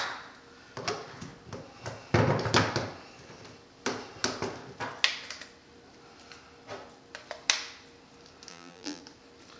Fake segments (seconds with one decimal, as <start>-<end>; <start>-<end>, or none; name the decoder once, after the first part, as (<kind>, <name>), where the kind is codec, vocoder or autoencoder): 8.5-9.0 (vocoder, BigVGAN v2)